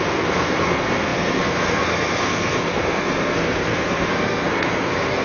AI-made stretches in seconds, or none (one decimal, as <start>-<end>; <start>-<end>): 0.0-5.2